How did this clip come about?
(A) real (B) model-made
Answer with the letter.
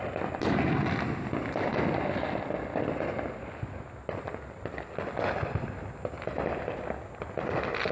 A